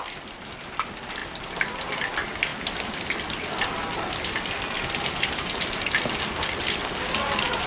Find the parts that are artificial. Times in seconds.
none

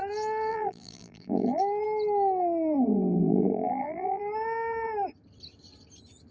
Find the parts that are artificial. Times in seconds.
0.5-1.6; 3.3-4.2

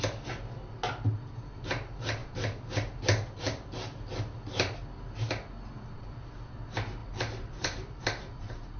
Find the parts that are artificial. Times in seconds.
7.0-8.8

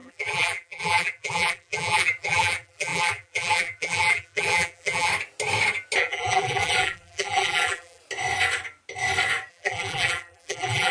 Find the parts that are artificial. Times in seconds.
0.0-5.1; 6.0-8.0; 9.5-10.9

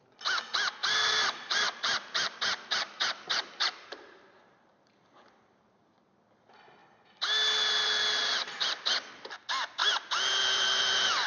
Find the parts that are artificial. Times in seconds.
0.8-6.0

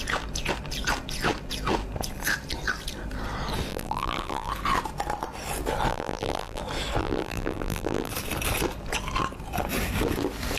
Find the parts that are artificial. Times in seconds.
3.7-4.5; 5.9-6.6; 7.0-8.1